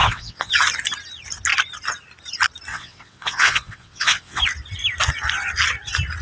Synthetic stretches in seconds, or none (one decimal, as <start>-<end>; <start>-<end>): 0.0-0.5; 2.7-4.4